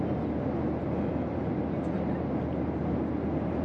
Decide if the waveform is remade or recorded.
recorded